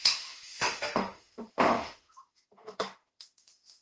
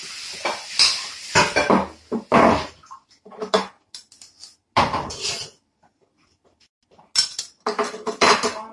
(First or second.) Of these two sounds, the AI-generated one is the first